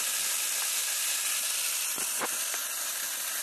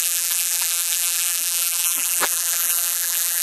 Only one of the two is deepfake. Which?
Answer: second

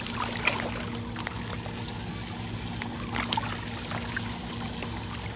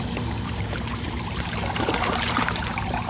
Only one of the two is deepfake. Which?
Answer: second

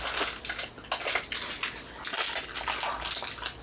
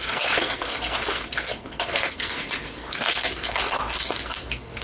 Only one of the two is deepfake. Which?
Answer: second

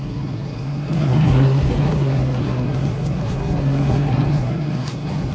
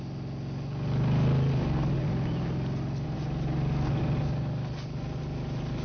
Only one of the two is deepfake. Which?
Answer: first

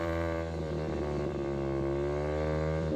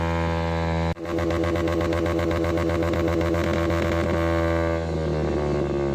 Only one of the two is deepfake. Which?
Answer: first